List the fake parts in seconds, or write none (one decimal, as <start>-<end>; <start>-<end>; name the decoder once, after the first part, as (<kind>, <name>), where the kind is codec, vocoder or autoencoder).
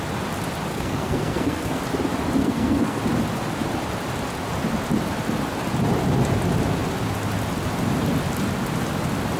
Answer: 0.7-1.8 (codec, SNAC); 2.4-3.0